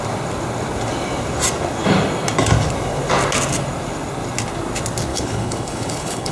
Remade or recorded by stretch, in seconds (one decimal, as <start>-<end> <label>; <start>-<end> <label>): 0.0-5.1 recorded; 5.1-6.3 remade